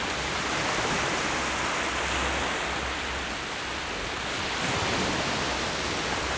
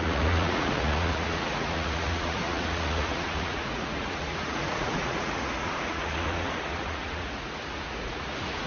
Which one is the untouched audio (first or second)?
first